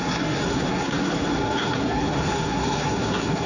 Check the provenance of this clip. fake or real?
fake